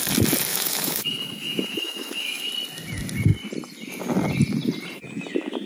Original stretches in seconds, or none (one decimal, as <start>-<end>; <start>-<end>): 0.0-0.5; 2.5-5.7